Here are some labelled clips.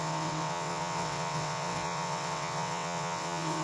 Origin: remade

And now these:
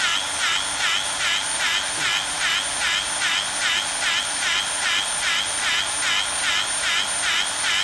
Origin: recorded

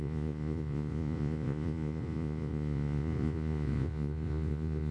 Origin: remade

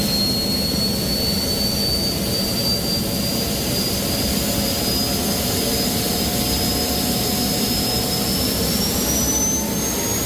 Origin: recorded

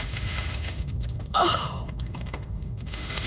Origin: remade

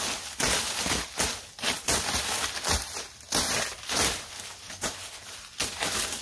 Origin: recorded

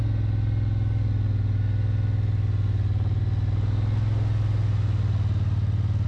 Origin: recorded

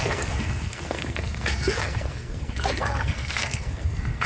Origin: remade